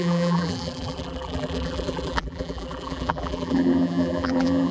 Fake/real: fake